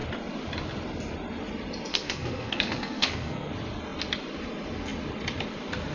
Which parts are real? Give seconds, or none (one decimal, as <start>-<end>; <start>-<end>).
0.0-1.9; 3.5-5.9